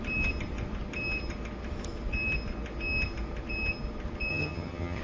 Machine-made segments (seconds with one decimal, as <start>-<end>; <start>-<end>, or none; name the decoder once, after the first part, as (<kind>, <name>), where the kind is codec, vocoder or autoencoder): 4.3-5.0 (vocoder, HiFi-GAN)